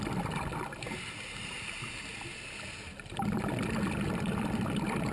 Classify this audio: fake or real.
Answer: real